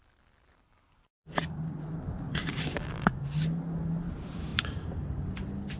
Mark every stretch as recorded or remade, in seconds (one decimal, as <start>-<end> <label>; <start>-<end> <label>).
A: 0.0-2.3 recorded; 2.3-3.2 remade; 3.2-5.8 recorded